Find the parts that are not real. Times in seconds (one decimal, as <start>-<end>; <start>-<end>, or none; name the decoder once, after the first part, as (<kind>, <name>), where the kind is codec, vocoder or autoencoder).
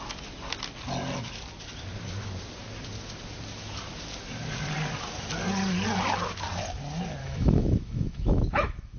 7.2-9.0 (autoencoder, DAC-VAE)